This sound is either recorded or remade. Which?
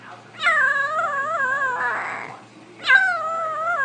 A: recorded